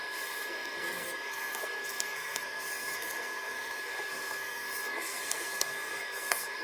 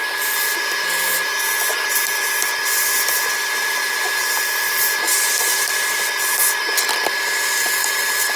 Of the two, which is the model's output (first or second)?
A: first